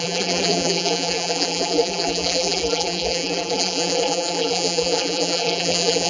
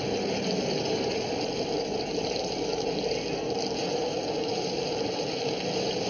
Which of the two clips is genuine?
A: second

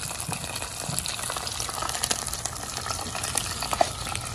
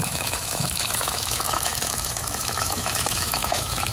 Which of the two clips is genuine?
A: first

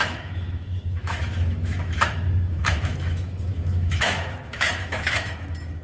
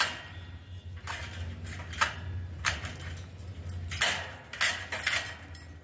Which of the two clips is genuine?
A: second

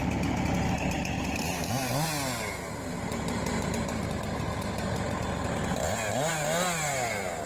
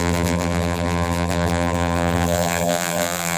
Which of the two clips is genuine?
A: first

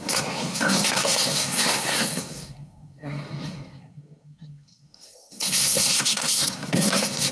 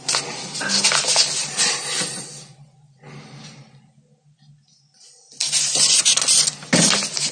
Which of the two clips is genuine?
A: second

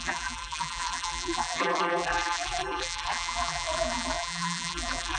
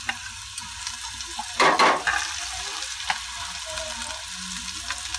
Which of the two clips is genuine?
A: second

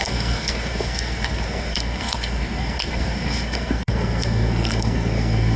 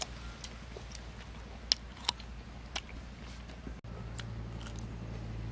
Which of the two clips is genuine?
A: second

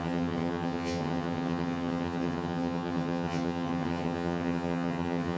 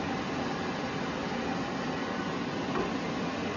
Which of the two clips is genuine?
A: second